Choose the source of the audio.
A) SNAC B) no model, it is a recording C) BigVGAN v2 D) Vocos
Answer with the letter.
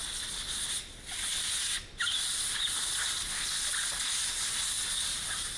B